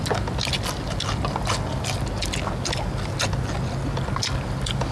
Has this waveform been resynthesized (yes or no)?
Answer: no